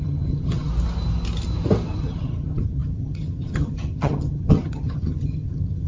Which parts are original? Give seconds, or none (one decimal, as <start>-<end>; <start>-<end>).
0.7-2.0